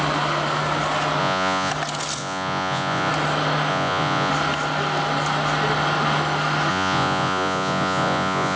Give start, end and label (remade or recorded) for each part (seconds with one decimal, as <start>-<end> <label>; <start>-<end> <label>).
0.0-1.2 recorded; 1.2-1.7 remade; 1.7-2.2 recorded; 2.2-3.1 remade; 3.1-3.7 recorded; 3.7-4.3 remade; 4.3-6.7 recorded; 6.7-8.6 remade